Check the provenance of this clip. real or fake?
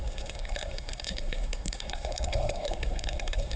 fake